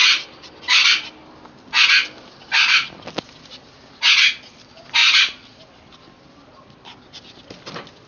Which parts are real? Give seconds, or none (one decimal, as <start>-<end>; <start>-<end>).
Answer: 0.6-5.0; 6.8-8.1